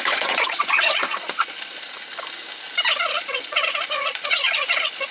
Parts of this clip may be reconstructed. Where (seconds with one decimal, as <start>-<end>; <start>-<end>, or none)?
0.0-2.1; 3.0-5.1